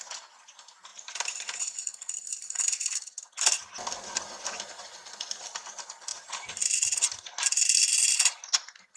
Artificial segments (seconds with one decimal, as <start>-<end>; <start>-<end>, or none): none